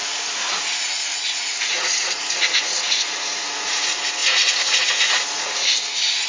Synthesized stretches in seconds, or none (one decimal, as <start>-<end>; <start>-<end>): 0.0-6.3